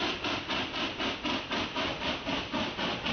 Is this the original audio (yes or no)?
yes